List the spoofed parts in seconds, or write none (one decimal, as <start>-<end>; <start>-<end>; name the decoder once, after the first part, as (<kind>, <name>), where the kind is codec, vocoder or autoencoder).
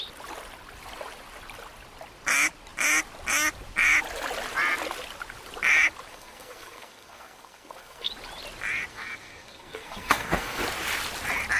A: 6.1-8.1 (codec, SNAC); 8.9-10.6